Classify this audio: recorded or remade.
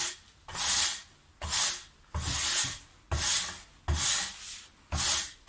recorded